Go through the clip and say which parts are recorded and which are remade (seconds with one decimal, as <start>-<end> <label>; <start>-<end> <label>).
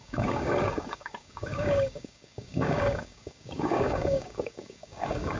0.0-5.4 remade